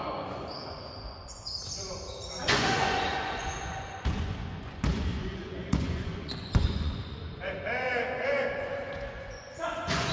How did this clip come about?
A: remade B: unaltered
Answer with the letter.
A